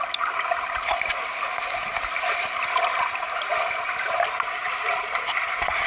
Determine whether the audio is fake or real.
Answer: real